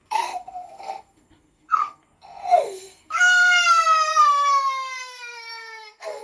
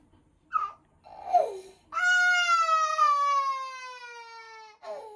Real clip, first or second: second